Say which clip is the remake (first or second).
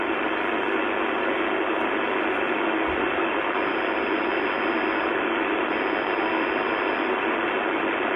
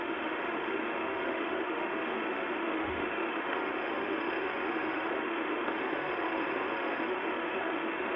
second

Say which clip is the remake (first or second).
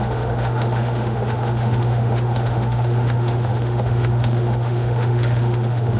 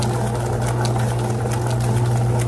first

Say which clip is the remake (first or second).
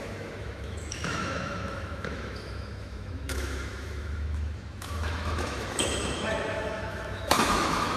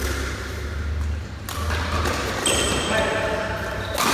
first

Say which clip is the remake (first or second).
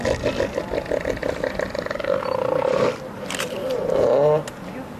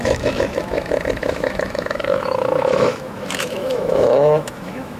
second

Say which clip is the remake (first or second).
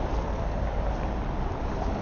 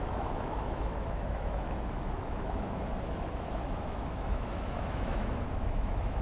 second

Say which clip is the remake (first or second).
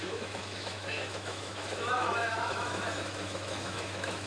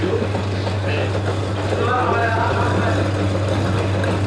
first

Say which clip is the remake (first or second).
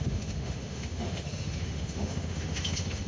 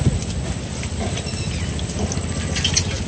first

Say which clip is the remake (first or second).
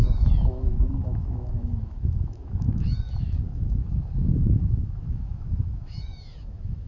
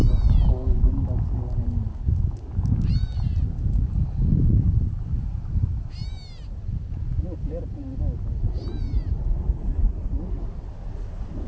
first